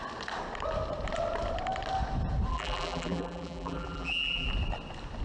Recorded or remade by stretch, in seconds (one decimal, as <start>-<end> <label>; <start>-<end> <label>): 0.0-2.5 recorded; 2.5-4.5 remade; 4.5-5.2 recorded